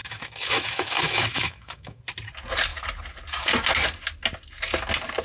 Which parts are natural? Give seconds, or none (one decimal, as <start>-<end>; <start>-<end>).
2.0-5.2

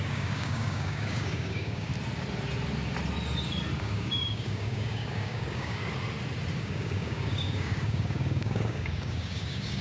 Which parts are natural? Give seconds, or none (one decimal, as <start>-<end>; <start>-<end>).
1.9-3.8; 5.8-6.6

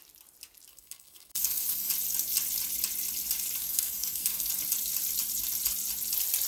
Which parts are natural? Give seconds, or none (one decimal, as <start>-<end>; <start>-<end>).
0.0-0.7; 1.9-3.6; 4.5-6.5

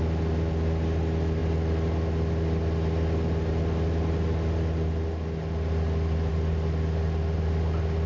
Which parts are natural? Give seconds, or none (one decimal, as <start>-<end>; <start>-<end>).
0.0-8.1

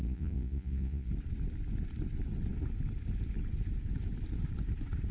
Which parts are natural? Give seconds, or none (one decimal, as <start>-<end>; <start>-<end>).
1.1-5.1

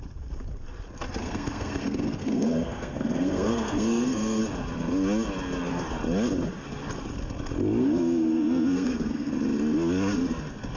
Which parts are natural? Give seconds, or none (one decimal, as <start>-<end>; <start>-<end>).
0.0-1.2; 4.4-7.8; 9.3-10.8